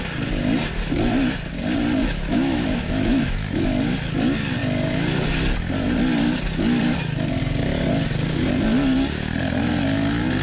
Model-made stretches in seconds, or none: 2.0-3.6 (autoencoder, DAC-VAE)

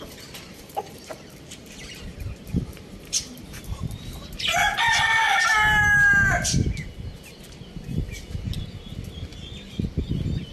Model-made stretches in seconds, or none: 0.5-4.8 (vocoder, BigVGAN v2)